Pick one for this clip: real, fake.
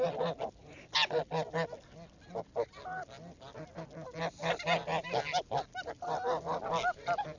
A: real